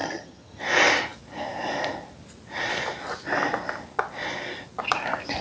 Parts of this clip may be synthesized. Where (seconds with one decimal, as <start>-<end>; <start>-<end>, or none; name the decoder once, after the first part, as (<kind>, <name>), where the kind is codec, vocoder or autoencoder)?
0.0-0.6 (vocoder, HiFi-GAN)